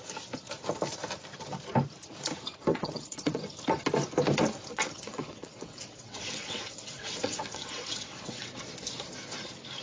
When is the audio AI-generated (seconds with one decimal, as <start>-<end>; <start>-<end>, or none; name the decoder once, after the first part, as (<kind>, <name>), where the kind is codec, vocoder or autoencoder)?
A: 2.7-3.4 (vocoder, WaveNeXt); 4.7-8.6